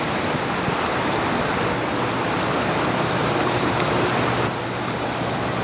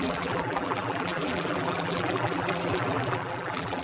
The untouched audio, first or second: first